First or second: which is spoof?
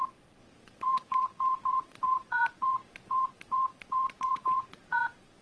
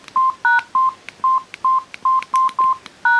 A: first